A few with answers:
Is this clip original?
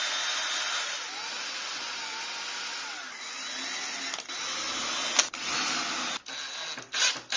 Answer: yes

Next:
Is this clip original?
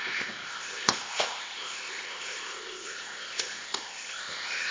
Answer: no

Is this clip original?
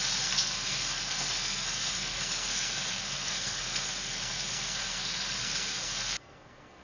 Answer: no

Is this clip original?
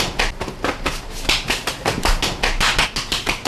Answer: yes